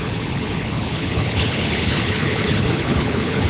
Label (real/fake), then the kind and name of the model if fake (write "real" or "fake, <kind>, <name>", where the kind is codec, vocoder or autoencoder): fake, codec, HILCodec